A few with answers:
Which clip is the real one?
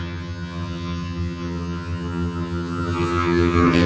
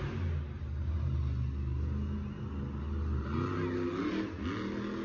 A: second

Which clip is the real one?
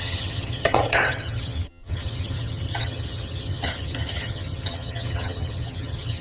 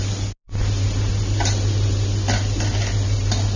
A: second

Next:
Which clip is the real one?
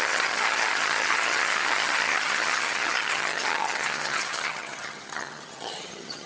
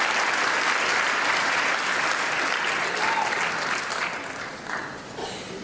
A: second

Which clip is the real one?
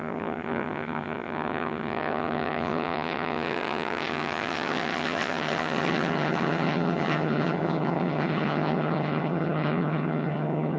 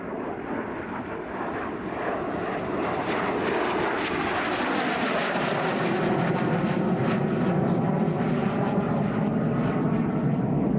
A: second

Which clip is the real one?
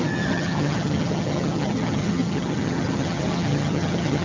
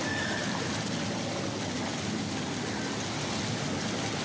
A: second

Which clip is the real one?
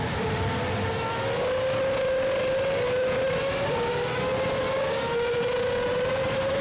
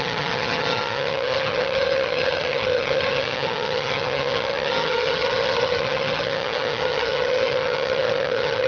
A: first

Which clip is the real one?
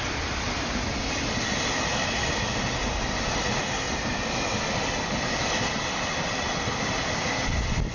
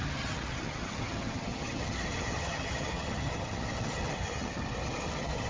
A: first